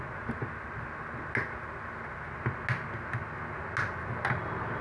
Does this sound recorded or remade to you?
recorded